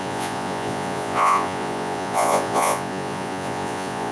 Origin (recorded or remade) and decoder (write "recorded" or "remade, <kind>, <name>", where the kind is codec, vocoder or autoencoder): remade, vocoder, Vocos